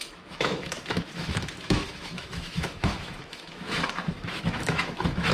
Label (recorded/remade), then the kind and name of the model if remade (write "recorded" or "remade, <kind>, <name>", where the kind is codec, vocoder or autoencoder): remade, autoencoder, DAC-VAE